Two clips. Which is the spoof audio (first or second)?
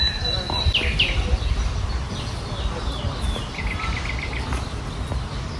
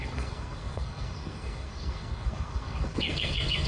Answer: second